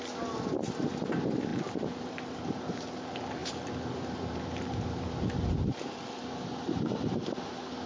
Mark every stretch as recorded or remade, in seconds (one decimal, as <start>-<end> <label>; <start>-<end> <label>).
0.0-1.5 recorded; 1.5-2.1 remade; 2.1-3.4 recorded; 3.4-6.3 remade; 6.3-7.9 recorded